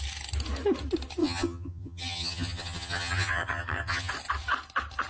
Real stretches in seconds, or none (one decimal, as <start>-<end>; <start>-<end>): 0.0-1.2; 4.1-5.1